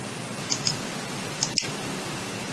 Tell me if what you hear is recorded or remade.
recorded